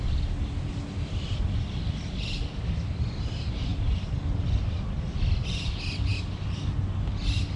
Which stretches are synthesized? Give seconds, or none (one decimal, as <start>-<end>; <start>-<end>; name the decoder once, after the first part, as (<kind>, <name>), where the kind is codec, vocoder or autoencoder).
none